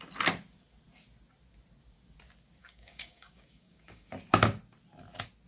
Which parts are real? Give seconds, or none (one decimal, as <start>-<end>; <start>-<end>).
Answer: 0.0-2.6; 4.1-5.5